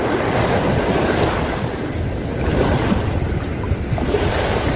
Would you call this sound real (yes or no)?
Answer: yes